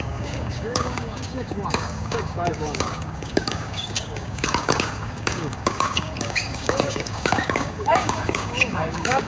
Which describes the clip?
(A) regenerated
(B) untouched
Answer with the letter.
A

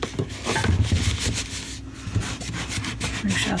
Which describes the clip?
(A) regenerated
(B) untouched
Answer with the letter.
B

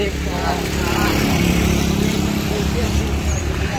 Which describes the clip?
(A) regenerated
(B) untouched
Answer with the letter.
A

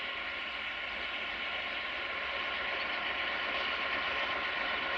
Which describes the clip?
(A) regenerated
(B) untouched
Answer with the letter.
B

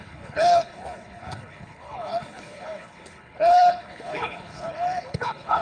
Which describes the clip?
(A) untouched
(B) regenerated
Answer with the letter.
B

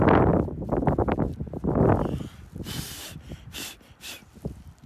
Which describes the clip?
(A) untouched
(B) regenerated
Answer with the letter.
A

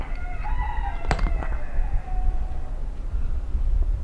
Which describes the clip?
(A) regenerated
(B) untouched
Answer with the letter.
B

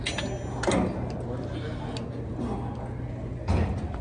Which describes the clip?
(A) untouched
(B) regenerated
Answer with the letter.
A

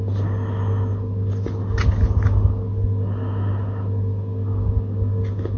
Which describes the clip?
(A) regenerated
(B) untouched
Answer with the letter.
B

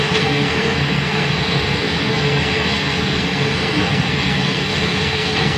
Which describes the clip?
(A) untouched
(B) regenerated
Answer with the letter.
B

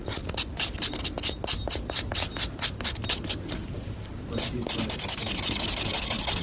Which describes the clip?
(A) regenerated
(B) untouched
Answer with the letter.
B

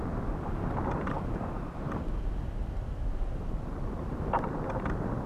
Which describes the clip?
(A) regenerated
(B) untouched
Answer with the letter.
B